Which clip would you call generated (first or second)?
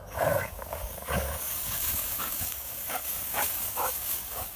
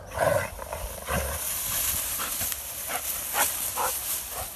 first